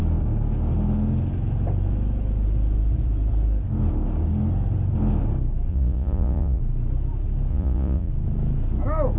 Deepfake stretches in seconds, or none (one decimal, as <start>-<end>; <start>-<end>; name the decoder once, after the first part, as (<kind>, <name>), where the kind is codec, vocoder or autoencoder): 5.7-6.6 (vocoder, Vocos); 7.5-8.1